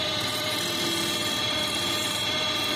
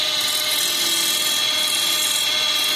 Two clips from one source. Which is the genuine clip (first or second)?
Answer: second